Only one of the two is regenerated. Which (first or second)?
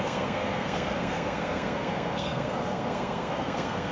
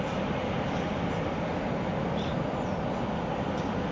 first